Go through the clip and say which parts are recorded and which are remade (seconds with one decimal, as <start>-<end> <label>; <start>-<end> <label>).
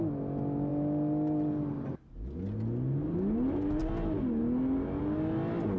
0.0-5.8 recorded